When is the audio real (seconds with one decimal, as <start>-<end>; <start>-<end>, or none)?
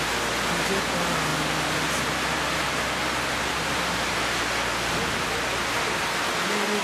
0.0-6.8